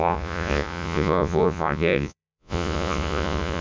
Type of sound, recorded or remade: remade